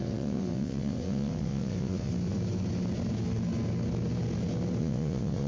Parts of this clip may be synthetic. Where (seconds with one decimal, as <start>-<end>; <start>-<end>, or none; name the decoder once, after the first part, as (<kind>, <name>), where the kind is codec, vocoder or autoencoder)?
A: 0.0-2.1 (vocoder, WaveNeXt); 4.8-5.5

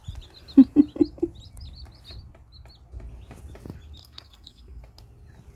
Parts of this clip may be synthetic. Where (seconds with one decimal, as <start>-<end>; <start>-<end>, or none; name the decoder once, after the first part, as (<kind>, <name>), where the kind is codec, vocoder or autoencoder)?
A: 4.0-4.8 (codec, SNAC)

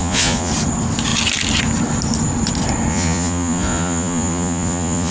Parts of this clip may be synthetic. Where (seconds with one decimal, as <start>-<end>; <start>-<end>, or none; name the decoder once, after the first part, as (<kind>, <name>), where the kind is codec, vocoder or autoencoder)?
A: 0.0-0.5 (vocoder, Vocos); 2.9-5.1

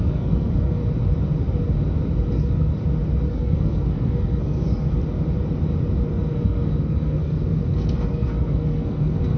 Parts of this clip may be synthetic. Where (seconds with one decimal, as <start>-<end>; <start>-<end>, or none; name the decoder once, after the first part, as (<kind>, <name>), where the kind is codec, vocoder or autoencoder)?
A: 0.0-0.8 (codec, SNAC); 2.3-2.7; 3.3-5.0; 6.0-9.4